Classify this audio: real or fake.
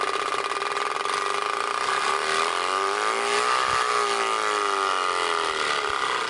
real